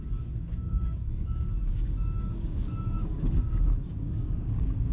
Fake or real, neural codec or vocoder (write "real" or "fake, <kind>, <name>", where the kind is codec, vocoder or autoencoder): fake, codec, DAC